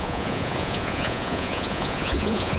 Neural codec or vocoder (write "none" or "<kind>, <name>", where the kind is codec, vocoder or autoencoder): vocoder, Vocos